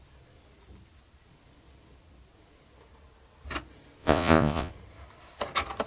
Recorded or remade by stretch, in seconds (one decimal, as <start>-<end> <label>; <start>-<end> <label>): 0.0-4.0 recorded; 4.0-4.7 remade; 4.7-5.9 recorded